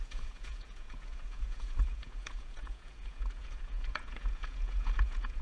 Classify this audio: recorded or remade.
remade